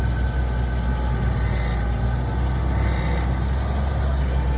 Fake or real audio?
real